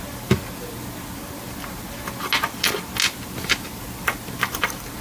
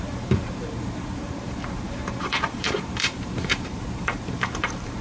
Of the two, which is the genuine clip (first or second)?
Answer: first